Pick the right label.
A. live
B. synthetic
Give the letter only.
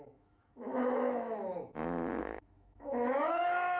B